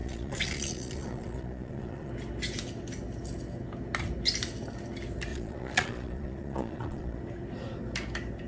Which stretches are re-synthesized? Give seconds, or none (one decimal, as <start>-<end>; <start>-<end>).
0.0-2.1; 5.3-7.2